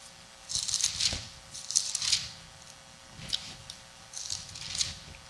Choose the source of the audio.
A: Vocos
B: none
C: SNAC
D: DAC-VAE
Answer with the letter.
B